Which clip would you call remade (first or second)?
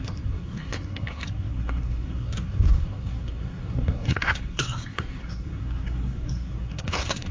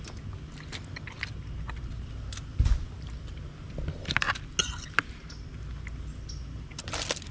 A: first